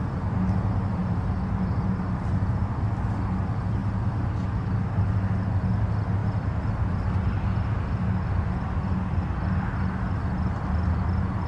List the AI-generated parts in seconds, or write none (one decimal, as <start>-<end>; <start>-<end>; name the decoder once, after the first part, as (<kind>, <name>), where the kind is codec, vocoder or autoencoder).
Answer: 1.0-2.0 (vocoder, BigVGAN v2)